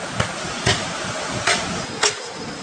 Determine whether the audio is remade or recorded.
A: recorded